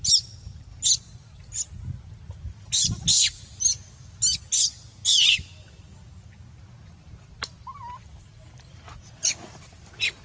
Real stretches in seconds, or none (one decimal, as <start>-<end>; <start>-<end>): 0.0-10.2